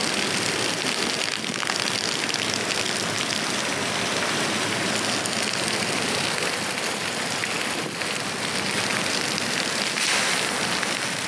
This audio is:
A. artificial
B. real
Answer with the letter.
B